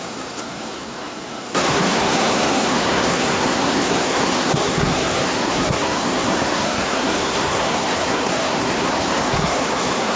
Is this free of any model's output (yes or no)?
no